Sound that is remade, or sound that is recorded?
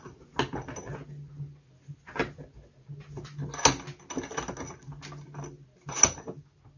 recorded